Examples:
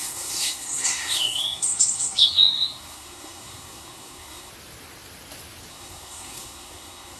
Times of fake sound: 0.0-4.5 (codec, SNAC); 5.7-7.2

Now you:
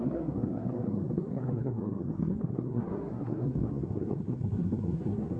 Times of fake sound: 0.0-5.4 (codec, SNAC)

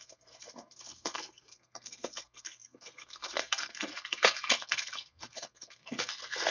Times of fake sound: 0.0-6.5 (codec, SNAC)